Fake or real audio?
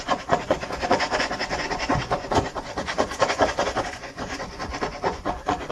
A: fake